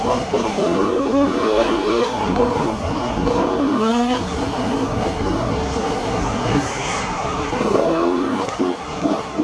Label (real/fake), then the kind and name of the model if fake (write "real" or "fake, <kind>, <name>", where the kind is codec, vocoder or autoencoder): fake, codec, SNAC